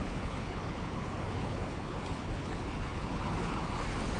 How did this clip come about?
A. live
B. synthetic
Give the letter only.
B